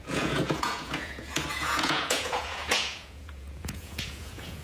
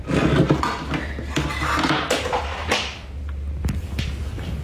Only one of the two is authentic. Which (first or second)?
second